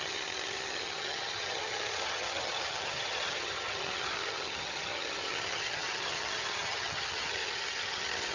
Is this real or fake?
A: fake